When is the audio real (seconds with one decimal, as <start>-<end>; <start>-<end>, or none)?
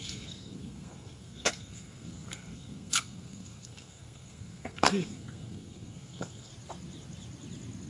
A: 6.5-7.9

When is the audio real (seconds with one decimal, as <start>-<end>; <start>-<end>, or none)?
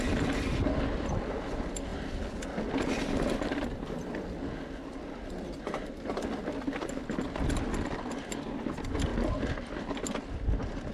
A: 0.0-10.9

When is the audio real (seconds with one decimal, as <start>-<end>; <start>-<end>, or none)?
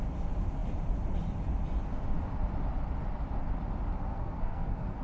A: 0.0-4.1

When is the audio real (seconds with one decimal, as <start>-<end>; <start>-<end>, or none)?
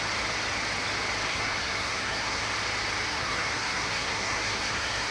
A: 0.0-1.3; 2.4-3.1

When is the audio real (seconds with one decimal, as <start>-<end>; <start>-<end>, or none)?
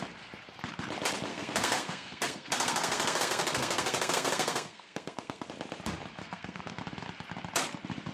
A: 0.0-1.3; 5.5-6.2; 6.8-8.1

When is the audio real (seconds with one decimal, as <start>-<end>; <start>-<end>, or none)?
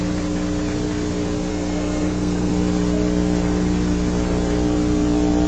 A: 0.0-1.5; 2.5-5.5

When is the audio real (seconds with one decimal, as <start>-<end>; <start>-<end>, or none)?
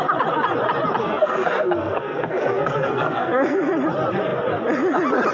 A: 0.0-1.0; 3.7-5.3